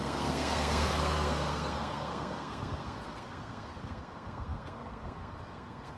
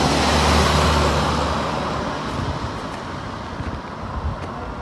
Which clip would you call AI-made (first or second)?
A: first